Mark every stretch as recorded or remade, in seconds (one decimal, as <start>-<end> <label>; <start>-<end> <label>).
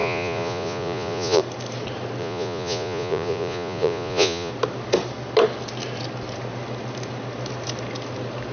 0.0-1.4 remade; 1.4-2.2 recorded; 2.2-4.5 remade; 4.5-8.5 recorded